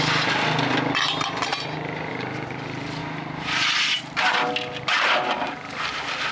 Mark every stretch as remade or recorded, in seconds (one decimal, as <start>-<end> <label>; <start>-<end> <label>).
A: 0.0-1.5 recorded; 1.5-2.1 remade; 2.1-3.0 recorded; 3.0-4.5 remade; 4.5-6.3 recorded